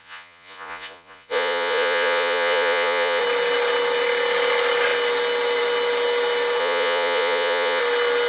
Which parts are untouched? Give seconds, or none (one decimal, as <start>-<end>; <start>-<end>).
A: 3.2-6.6; 7.8-8.3